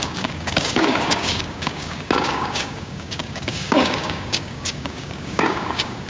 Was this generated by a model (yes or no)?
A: yes